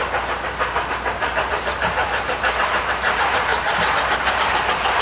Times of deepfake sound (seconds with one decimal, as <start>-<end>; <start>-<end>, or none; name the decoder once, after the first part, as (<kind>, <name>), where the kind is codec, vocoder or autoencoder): 1.6-2.0 (vocoder, BigVGAN v2); 2.6-3.5; 4.3-5.0